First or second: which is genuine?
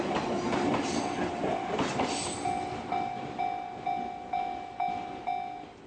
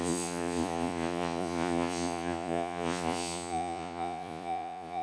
first